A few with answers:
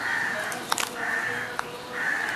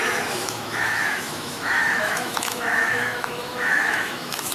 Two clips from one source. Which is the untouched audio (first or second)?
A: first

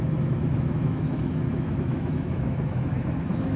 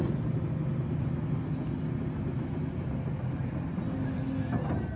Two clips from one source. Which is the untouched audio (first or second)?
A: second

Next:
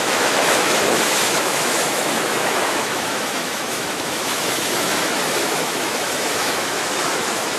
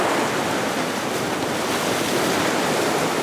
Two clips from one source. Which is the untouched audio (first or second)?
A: second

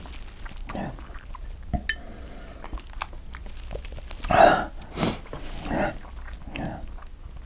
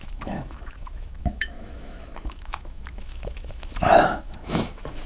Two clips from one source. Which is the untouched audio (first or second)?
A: first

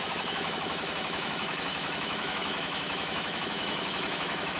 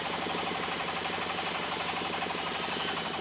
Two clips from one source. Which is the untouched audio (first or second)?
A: second